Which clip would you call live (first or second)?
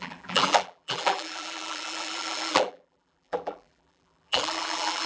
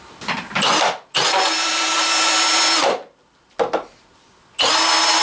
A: second